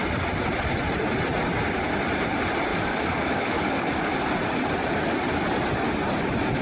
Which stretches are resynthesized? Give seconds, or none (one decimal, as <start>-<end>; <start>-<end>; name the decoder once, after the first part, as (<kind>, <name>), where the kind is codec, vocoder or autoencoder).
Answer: 2.7-4.1 (codec, DAC)